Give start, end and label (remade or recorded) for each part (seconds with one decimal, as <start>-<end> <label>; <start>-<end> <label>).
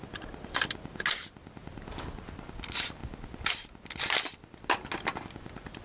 0.0-5.8 recorded